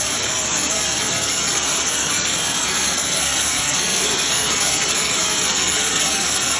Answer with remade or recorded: remade